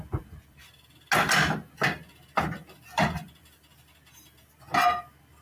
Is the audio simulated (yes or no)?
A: no